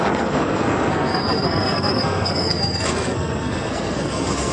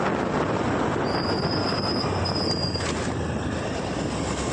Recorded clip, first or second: second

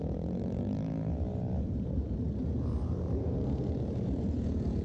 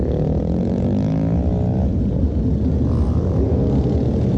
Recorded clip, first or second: second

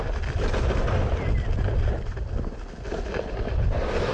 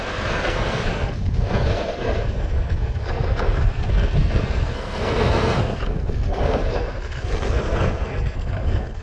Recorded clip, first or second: first